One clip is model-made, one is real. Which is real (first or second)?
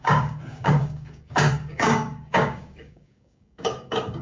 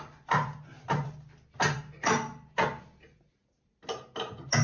second